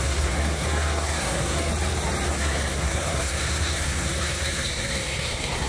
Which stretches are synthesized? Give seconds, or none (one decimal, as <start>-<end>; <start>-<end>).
0.0-1.7; 2.3-5.7